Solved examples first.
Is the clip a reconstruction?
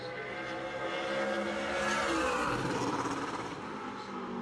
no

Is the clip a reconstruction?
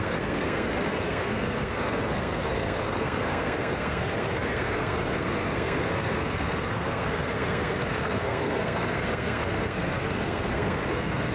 yes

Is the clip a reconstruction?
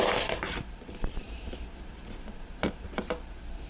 no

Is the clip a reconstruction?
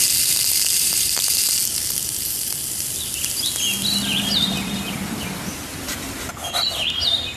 no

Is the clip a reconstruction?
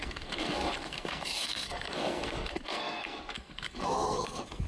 yes